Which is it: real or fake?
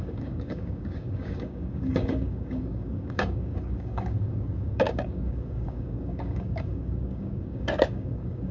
fake